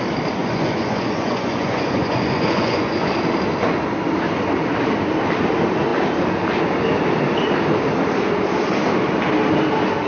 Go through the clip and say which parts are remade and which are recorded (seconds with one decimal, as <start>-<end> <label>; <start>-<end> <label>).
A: 0.0-0.4 recorded; 0.4-3.1 remade; 3.1-10.1 recorded